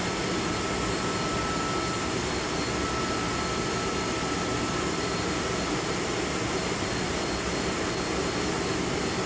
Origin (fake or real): real